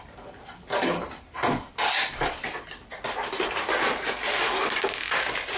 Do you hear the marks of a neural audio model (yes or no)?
no